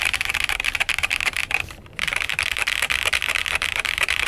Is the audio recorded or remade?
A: remade